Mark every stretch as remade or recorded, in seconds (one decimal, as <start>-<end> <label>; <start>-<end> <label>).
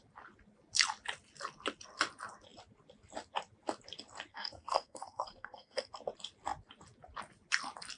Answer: 0.0-4.3 recorded; 4.3-5.9 remade; 5.9-8.0 recorded